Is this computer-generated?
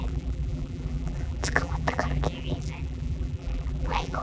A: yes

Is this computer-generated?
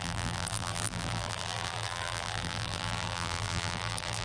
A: yes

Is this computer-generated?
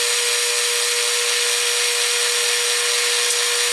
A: no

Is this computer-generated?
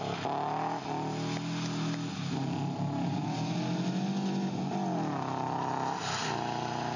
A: no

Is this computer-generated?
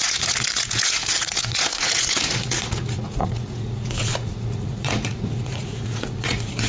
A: yes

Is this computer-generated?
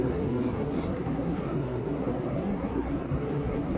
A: yes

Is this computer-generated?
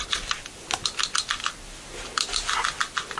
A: no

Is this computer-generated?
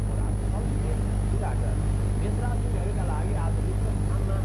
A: no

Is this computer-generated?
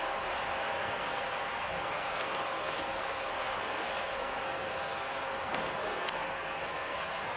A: yes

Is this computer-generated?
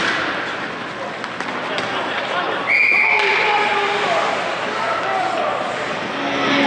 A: no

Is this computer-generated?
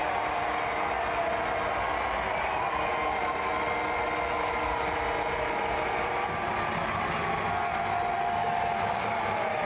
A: no